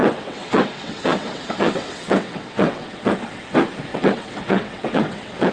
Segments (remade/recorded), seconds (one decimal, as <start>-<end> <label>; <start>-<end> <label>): 0.0-3.1 remade; 3.1-3.9 recorded; 3.9-5.5 remade